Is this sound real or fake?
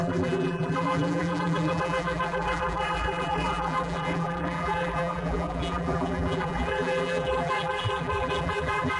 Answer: fake